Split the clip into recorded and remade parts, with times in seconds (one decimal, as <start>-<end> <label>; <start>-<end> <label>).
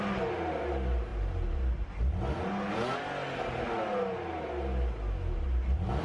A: 0.0-6.0 recorded